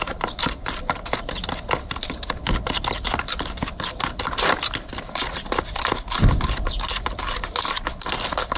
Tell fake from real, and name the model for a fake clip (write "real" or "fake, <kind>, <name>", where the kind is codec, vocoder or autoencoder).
real